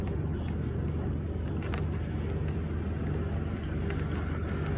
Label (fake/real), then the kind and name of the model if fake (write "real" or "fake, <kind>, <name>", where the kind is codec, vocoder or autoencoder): real